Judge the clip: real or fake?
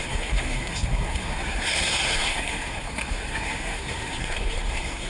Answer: fake